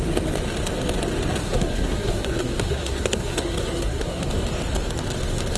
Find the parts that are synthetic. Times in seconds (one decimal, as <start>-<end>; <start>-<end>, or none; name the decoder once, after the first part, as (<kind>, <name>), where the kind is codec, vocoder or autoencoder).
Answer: 1.4-4.3 (codec, SNAC)